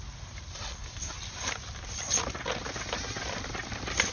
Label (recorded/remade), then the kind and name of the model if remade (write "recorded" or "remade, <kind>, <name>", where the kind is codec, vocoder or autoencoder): recorded